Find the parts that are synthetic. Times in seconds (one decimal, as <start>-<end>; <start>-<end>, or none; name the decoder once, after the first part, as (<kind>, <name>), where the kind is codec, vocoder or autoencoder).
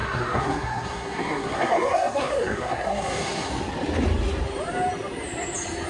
0.0-3.5 (codec, SNAC)